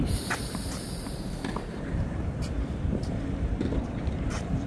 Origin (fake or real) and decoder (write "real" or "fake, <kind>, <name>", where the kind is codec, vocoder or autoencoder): fake, vocoder, BigVGAN v2